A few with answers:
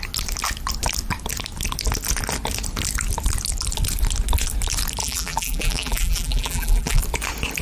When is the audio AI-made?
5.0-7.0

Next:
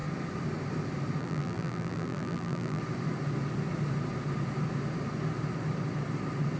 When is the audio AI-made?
1.2-2.8

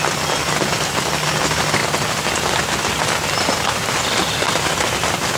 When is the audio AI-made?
none

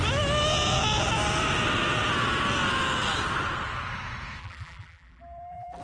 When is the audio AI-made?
4.4-5.8